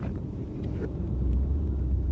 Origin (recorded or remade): remade